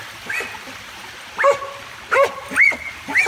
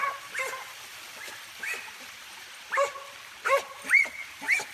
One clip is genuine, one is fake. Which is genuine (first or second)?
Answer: first